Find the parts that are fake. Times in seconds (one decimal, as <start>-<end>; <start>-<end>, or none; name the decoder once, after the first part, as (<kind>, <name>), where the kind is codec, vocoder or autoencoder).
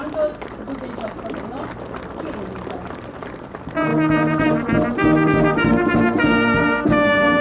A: none